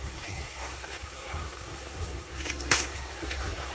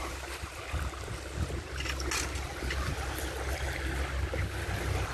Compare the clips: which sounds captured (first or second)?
second